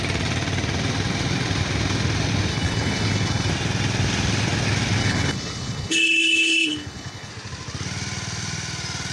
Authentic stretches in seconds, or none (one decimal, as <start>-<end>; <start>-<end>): 0.0-2.5; 3.5-5.0; 7.3-9.1